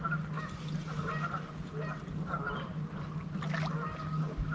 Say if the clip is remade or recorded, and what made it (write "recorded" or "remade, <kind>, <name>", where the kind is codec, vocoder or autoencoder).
recorded